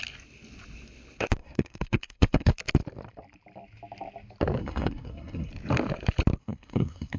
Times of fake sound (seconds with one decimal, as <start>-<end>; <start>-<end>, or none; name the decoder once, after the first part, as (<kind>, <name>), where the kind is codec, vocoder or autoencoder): 1.4-2.5 (codec, SNAC); 4.6-5.5; 6.4-7.2